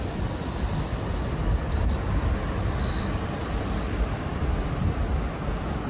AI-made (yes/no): no